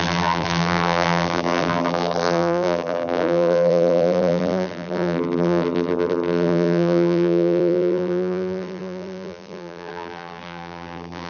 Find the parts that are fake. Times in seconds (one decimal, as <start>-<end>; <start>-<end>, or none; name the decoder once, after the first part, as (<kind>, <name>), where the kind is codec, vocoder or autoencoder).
0.0-11.3 (vocoder, BigVGAN v2)